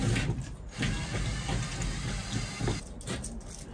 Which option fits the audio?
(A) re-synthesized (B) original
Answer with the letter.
B